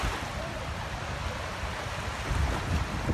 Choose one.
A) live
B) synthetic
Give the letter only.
A